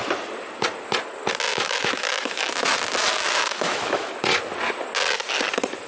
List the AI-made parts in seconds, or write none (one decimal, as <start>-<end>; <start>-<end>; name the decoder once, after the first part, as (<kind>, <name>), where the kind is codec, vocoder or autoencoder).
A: 1.5-2.5 (autoencoder, DAC-VAE); 3.1-4.1